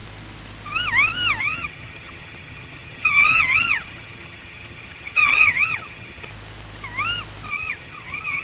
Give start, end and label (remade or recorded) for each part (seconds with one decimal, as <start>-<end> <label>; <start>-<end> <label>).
0.0-1.4 recorded; 1.4-6.3 remade; 6.3-7.5 recorded; 7.5-8.4 remade